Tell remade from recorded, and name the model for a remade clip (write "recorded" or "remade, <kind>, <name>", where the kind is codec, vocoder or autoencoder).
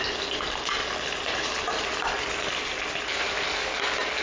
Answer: recorded